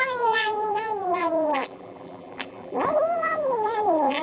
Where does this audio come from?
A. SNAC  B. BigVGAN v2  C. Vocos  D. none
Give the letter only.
B